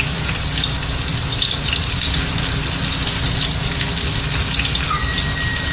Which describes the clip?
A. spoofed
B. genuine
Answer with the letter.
B